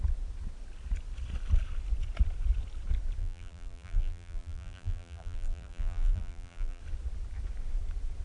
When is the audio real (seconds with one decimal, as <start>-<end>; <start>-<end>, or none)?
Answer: 0.0-3.2; 6.8-8.2